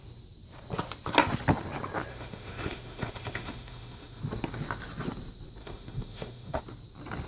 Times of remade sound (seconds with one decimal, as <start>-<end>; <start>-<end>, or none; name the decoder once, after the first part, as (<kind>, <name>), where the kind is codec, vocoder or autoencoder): 2.1-4.2 (autoencoder, DAC-VAE); 5.6-6.6